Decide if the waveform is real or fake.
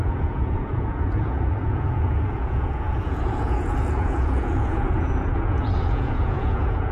fake